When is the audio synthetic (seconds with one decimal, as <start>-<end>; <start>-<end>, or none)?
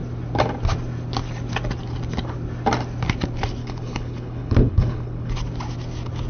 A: 3.6-5.3